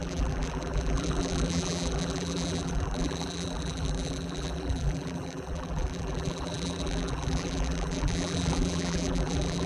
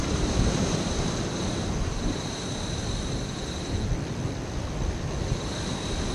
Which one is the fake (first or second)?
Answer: first